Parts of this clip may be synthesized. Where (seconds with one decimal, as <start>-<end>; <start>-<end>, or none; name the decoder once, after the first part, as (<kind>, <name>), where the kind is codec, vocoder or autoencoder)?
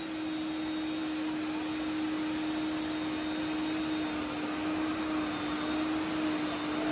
none